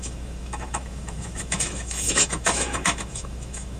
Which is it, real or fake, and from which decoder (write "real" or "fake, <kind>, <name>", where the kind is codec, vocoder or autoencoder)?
fake, autoencoder, DAC-VAE